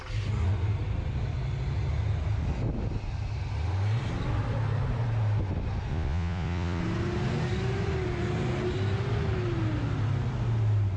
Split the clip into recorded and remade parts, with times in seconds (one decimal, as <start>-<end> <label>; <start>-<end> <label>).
0.0-5.9 recorded; 5.9-6.8 remade; 6.8-11.0 recorded